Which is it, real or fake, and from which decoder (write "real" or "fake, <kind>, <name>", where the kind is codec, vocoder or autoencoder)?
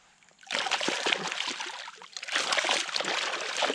real